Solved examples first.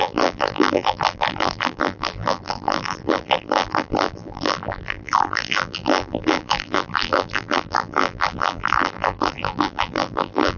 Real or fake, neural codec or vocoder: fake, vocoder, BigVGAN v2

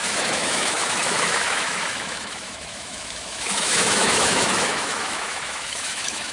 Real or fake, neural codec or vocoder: fake, autoencoder, DAC-VAE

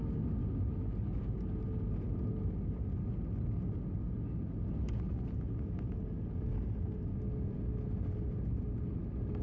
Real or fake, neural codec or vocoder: real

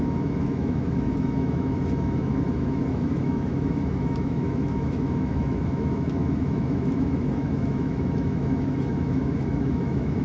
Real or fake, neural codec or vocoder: fake, autoencoder, DAC-VAE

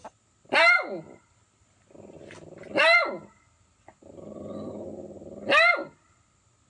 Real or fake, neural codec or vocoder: real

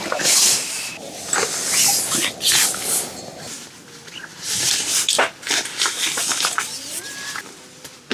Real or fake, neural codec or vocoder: real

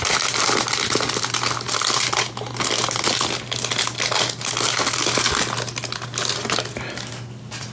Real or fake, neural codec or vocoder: real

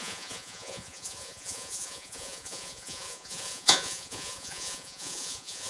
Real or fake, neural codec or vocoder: fake, vocoder, Vocos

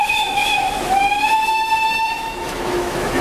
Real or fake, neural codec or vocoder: fake, autoencoder, DAC-VAE